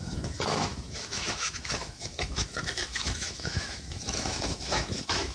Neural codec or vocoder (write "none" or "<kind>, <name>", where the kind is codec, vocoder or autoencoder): autoencoder, DAC-VAE